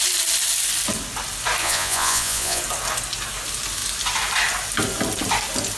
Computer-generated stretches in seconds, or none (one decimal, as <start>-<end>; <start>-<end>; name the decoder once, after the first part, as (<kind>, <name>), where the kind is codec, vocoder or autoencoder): 1.6-2.6 (vocoder, Vocos)

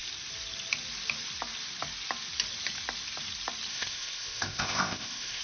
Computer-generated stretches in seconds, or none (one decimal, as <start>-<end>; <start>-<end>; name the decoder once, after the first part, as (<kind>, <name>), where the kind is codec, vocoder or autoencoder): 3.7-5.4 (codec, ZipCodec)

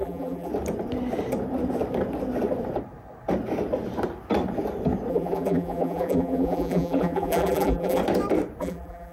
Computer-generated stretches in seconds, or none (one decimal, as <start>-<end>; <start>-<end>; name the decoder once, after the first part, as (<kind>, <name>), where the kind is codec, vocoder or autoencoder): 0.0-0.5 (vocoder, BigVGAN v2); 5.1-8.0; 8.6-9.1

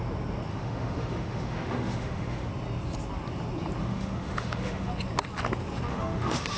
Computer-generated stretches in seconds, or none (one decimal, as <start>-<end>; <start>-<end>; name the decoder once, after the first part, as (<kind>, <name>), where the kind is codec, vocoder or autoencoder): 0.5-2.5 (autoencoder, DAC-VAE); 3.8-4.9; 5.9-6.6

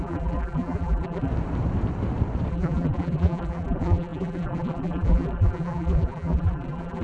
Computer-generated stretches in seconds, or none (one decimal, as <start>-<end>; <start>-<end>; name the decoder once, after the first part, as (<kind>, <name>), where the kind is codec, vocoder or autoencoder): 0.0-1.3 (vocoder, BigVGAN v2); 2.5-7.0

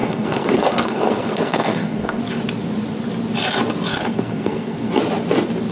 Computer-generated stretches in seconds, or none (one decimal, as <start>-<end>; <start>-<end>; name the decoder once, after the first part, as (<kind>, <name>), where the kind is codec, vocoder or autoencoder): 0.0-2.2 (codec, SNAC); 3.9-4.9